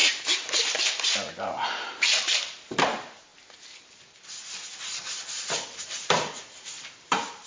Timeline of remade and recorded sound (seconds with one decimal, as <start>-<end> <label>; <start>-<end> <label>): 0.0-3.3 remade; 3.3-5.8 recorded; 5.8-7.5 remade